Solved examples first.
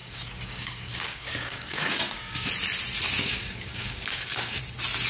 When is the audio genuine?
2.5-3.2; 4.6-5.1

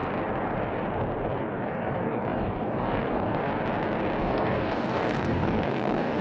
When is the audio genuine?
0.0-1.4; 3.5-4.2

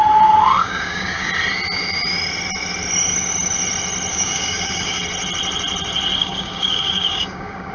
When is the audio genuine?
0.0-0.6; 1.3-4.1; 5.0-6.2

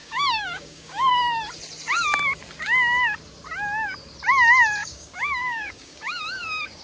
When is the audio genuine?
1.1-4.8